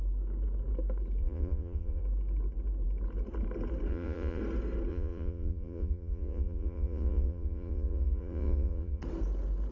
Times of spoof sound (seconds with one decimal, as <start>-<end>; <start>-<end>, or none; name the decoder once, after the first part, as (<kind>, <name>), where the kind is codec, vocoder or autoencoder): 1.2-2.0 (vocoder, Vocos); 3.9-4.4; 4.9-9.0